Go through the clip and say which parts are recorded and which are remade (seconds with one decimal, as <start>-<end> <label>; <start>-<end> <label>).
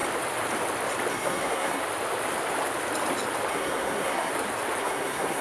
0.0-1.1 recorded; 1.1-1.8 remade; 1.8-3.5 recorded; 3.5-4.3 remade; 4.3-4.8 recorded; 4.8-5.4 remade